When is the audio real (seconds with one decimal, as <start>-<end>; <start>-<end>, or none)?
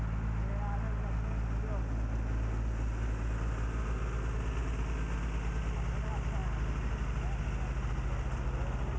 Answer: 0.0-9.0